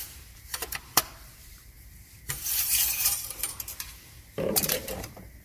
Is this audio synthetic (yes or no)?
yes